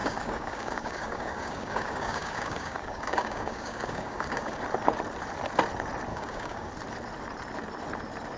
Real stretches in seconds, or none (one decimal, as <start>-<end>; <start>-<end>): 4.6-6.1; 6.7-8.4